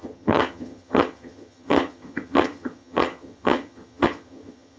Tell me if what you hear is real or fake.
fake